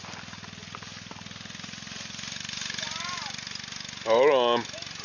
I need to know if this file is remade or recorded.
recorded